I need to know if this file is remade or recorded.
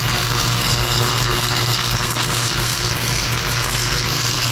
remade